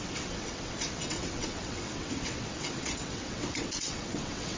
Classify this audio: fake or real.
fake